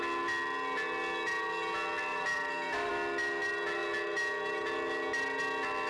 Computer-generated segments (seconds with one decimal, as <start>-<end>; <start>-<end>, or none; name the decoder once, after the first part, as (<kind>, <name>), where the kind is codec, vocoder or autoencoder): 2.1-2.9 (vocoder, BigVGAN v2)